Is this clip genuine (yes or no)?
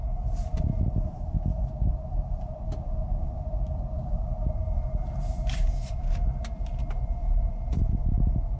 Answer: no